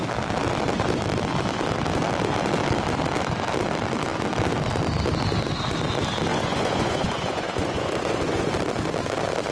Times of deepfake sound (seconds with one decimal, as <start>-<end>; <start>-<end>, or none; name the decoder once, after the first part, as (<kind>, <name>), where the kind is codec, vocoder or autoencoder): 6.3-8.5 (vocoder, Vocos)